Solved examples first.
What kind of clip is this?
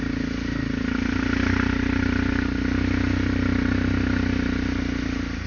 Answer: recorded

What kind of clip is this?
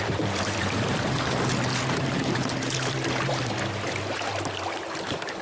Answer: remade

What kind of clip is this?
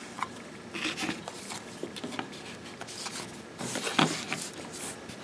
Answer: recorded